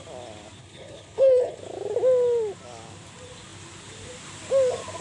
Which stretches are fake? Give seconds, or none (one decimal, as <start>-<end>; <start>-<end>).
0.6-1.6